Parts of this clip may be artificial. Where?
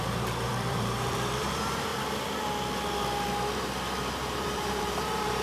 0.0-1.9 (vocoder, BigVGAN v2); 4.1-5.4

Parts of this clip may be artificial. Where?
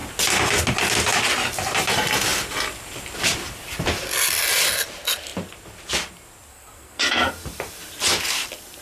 6.5-7.3 (codec, SNAC)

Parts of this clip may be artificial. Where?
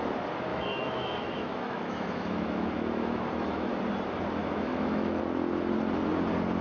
0.5-3.7 (autoencoder, DAC-VAE); 4.4-5.2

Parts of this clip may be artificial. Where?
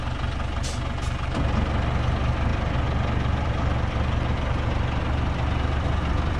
none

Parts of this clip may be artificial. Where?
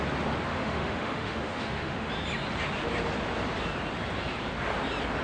0.5-2.1 (autoencoder, DAC-VAE)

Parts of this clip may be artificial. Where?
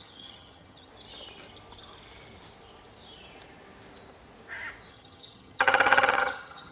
0.0-0.9 (vocoder, HiFi-GAN); 4.9-6.7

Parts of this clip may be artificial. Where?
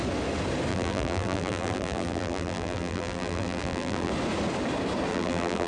0.7-4.1 (vocoder, BigVGAN v2); 5.1-5.7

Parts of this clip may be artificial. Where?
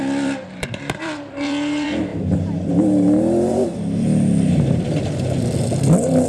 0.0-2.1 (vocoder, BigVGAN v2); 3.5-6.3